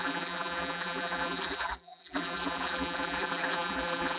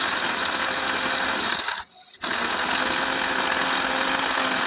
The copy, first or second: first